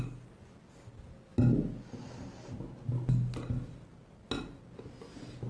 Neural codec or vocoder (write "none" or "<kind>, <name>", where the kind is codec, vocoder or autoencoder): none